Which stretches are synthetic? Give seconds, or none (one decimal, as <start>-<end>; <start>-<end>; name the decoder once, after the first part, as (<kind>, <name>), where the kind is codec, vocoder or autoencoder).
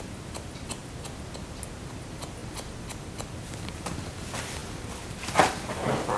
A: 0.0-0.8 (vocoder, BigVGAN v2); 1.9-6.2